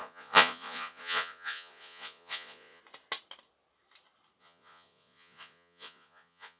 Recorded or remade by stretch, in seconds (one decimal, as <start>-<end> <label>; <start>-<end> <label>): 0.0-2.8 remade; 2.8-4.4 recorded; 4.4-6.6 remade